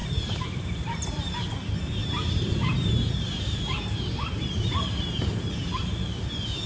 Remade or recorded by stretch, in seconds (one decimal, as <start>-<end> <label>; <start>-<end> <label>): 0.0-1.4 remade; 1.4-2.0 recorded; 2.0-5.5 remade; 5.5-6.7 recorded